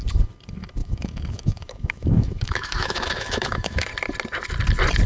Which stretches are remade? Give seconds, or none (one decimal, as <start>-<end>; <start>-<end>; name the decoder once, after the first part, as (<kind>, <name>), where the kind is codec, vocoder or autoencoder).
0.8-3.9 (autoencoder, DAC-VAE)

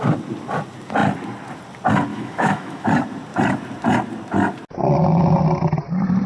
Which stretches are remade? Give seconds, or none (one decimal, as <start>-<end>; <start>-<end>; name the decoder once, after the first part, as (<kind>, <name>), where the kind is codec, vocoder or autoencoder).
2.1-2.9 (autoencoder, DAC-VAE)

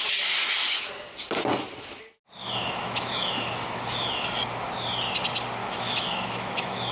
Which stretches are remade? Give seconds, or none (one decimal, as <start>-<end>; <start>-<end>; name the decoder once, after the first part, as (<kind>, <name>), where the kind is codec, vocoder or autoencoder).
2.4-4.2 (autoencoder, DAC-VAE); 5.6-6.9

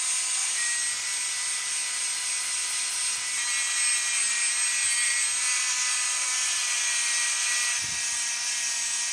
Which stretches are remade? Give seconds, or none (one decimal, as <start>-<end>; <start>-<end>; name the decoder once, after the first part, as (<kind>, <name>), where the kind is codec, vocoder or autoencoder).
none

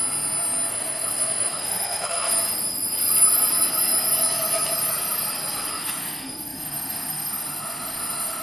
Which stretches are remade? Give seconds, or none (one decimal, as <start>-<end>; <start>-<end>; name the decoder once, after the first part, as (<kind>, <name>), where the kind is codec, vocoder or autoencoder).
0.7-2.3 (autoencoder, DAC-VAE); 5.7-8.4

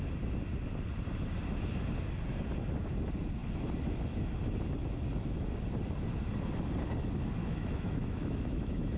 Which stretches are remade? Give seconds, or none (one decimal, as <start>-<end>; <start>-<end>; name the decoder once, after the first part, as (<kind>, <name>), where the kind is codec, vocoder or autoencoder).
7.4-9.0 (autoencoder, DAC-VAE)